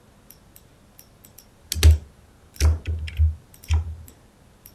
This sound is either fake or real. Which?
real